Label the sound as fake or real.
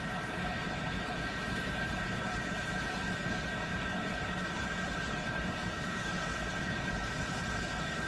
fake